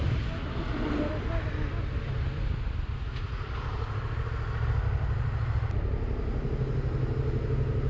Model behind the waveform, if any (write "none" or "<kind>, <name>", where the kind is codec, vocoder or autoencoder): none